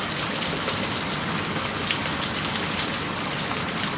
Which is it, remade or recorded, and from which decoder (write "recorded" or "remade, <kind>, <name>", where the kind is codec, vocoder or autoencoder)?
recorded